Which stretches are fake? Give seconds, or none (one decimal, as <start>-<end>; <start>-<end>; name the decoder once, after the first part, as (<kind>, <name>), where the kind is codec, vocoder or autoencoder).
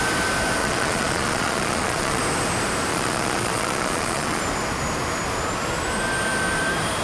0.6-2.2 (vocoder, Vocos); 2.9-4.4